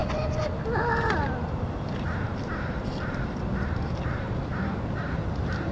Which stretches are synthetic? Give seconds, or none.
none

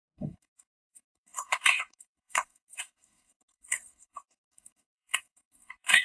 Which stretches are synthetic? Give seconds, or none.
0.0-6.0 (codec, SNAC)